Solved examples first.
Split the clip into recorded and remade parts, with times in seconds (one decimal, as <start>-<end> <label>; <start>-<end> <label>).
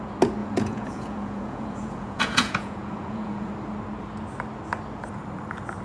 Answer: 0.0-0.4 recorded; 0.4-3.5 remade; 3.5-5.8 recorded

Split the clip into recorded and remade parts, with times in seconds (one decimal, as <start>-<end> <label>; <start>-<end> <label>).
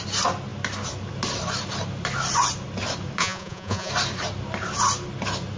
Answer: 0.0-3.2 recorded; 3.2-3.9 remade; 3.9-5.6 recorded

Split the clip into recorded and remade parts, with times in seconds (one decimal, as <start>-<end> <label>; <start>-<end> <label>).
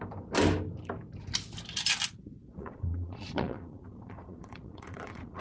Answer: 0.0-2.2 recorded; 2.2-5.4 remade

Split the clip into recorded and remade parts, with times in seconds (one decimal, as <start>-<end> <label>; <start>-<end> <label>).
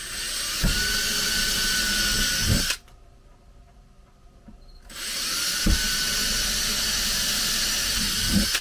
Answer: 0.0-8.6 recorded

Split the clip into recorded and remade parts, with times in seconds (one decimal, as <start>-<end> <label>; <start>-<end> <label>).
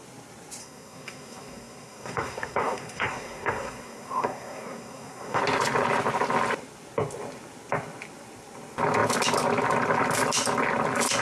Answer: 0.0-0.6 recorded; 0.6-5.4 remade; 5.4-11.2 recorded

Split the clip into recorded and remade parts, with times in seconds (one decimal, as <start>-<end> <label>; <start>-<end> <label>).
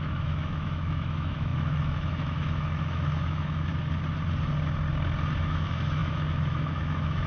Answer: 0.0-3.7 remade; 3.7-5.4 recorded; 5.4-7.3 remade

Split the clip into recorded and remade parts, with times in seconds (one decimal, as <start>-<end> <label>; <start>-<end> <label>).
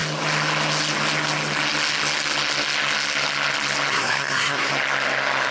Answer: 0.0-3.9 recorded; 3.9-4.7 remade; 4.7-5.5 recorded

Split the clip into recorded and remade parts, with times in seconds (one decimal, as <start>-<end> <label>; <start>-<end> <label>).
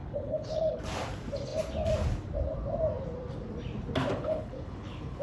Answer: 0.0-0.8 remade; 0.8-4.1 recorded; 4.1-5.2 remade